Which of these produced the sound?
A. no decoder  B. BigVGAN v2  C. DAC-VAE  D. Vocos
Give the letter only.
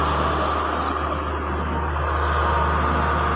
A